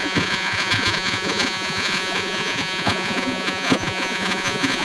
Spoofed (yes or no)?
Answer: yes